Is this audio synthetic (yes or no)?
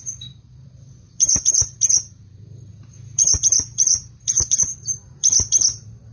yes